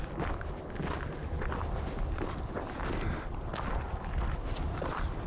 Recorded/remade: recorded